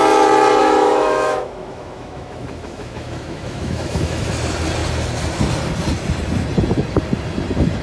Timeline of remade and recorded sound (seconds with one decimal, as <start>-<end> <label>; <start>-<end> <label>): 0.0-0.6 recorded; 0.6-4.3 remade; 4.3-7.8 recorded